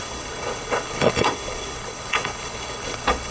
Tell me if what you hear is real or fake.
fake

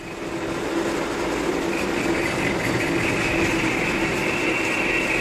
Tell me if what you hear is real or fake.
real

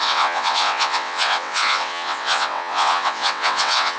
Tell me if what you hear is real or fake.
fake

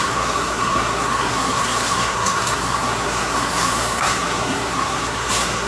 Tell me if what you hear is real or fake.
fake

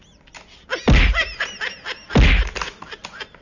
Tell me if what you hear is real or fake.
real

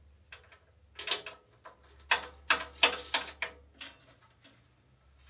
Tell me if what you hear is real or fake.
real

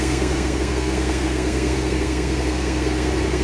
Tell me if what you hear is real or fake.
fake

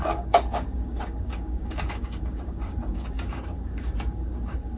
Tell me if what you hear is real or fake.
fake